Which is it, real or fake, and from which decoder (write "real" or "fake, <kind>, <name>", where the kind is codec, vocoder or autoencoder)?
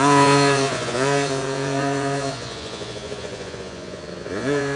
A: fake, vocoder, Vocos